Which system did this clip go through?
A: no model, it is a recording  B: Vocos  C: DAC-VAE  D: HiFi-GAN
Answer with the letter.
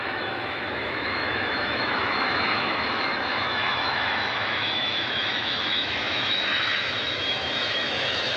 C